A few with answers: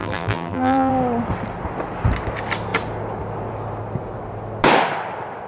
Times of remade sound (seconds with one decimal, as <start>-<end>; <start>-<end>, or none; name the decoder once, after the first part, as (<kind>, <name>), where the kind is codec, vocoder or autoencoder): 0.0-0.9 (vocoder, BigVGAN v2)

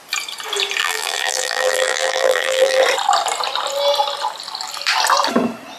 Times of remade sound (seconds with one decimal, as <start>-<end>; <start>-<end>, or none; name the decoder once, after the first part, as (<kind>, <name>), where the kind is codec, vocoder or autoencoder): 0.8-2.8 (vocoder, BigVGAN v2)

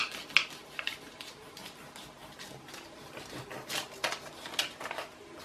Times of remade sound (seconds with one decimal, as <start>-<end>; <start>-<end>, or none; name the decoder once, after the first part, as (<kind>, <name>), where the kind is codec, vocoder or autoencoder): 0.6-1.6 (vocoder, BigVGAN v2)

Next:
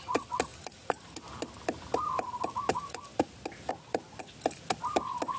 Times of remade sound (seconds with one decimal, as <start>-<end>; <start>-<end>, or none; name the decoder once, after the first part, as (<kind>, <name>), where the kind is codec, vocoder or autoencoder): none

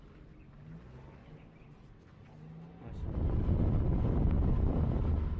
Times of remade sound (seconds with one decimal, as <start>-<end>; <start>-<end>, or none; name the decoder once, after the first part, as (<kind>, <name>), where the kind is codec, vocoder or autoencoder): none